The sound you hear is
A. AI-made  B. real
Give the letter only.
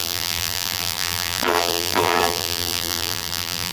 A